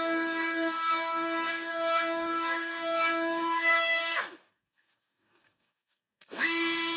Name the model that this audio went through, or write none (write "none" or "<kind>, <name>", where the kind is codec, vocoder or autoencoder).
codec, DAC